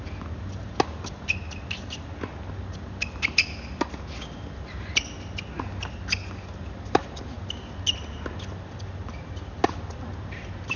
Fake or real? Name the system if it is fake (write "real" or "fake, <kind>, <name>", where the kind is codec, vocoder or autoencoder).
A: real